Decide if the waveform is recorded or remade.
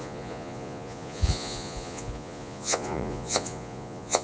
remade